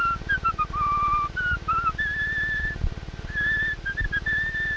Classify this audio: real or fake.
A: real